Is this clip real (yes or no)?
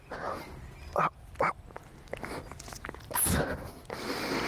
yes